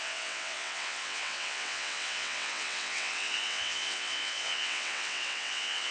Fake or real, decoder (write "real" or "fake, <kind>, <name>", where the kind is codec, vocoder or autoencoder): fake, vocoder, WaveNeXt